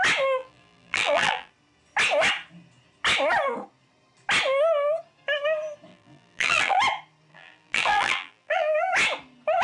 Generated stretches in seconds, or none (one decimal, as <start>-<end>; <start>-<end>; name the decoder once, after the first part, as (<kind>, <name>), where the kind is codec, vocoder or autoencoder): 0.4-1.5 (vocoder, BigVGAN v2); 5.9-6.8; 7.3-8.8